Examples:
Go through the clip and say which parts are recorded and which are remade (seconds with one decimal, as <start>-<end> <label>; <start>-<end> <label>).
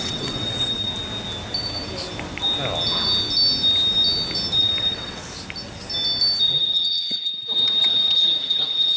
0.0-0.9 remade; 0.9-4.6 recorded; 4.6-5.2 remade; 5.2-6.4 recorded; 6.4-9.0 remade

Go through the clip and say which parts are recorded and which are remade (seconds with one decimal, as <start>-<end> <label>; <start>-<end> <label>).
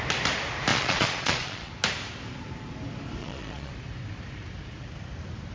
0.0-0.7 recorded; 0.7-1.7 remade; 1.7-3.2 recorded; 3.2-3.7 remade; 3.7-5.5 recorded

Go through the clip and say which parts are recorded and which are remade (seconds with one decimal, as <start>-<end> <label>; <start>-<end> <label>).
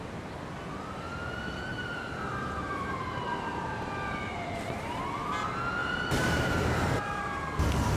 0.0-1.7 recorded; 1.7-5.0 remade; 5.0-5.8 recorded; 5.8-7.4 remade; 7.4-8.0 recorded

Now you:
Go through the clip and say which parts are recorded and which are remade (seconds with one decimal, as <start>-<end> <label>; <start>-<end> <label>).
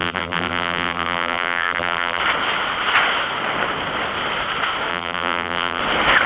0.0-2.2 remade; 2.2-4.9 recorded; 4.9-5.8 remade; 5.8-6.3 recorded